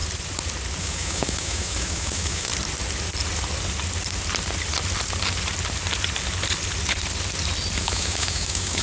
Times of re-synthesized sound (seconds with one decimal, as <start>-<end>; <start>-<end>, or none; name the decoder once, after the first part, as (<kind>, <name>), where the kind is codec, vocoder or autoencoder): 0.8-2.5 (autoencoder, DAC-VAE); 7.8-8.8